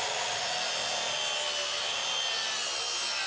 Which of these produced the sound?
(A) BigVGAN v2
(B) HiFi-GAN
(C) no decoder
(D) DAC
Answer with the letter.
C